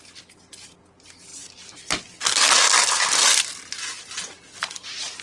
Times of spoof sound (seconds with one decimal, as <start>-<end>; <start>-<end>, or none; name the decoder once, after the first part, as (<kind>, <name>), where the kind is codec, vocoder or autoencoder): none